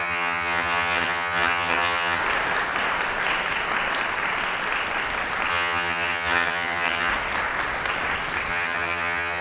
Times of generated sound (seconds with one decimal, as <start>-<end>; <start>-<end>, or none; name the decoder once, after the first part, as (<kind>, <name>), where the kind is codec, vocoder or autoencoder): 0.0-2.2 (vocoder, HiFi-GAN); 5.5-7.1; 8.5-9.4